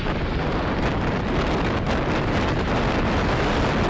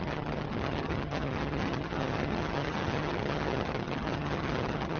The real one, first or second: first